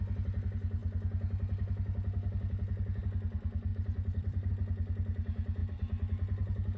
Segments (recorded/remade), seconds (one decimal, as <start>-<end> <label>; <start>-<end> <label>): 0.0-3.7 recorded; 3.7-4.5 remade; 4.5-6.8 recorded